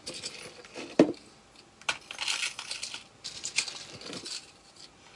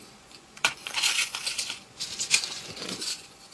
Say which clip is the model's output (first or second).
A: second